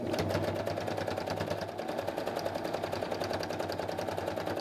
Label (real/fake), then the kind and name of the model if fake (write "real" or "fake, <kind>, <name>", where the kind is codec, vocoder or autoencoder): real